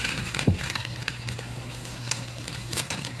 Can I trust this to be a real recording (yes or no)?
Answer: no